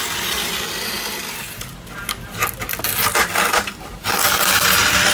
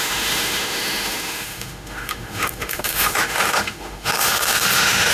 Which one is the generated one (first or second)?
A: second